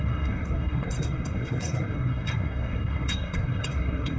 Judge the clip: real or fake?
fake